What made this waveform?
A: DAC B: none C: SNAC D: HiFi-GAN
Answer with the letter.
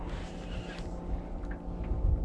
B